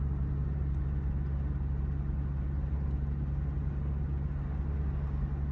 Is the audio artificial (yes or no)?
no